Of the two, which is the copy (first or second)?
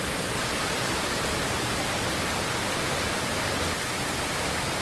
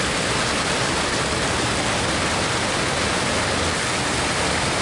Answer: first